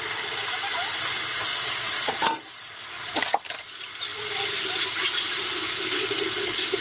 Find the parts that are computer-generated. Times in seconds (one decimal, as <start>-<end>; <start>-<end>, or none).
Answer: 1.5-2.1